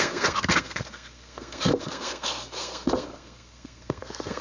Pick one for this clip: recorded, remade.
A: remade